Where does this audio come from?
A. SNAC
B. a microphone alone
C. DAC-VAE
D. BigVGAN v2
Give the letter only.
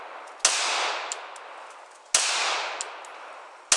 B